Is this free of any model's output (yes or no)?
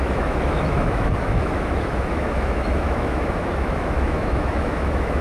no